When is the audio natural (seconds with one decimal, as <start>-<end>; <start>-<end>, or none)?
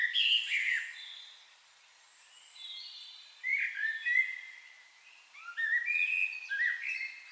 0.0-7.3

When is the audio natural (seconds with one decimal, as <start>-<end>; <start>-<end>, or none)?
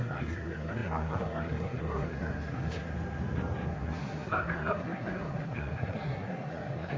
2.9-3.7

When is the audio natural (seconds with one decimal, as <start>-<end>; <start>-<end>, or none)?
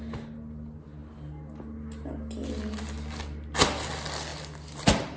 0.0-5.2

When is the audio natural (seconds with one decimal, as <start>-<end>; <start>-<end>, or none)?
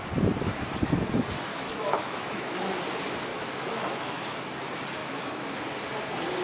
0.0-1.5; 2.7-3.3; 4.2-5.0; 5.6-6.4